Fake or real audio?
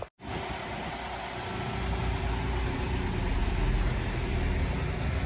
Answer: real